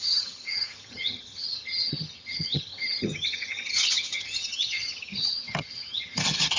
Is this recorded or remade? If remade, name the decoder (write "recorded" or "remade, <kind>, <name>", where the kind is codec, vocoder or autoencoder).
remade, vocoder, HiFi-GAN